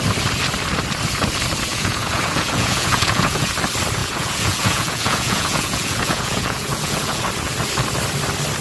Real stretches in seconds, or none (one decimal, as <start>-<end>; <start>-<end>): 0.0-1.7; 3.5-4.0; 7.2-8.6